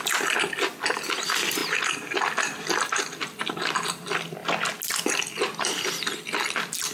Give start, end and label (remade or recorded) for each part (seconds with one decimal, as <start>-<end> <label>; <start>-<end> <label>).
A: 0.0-4.4 remade; 4.4-5.6 recorded; 5.6-6.9 remade